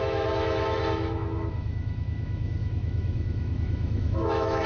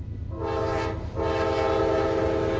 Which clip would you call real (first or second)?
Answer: second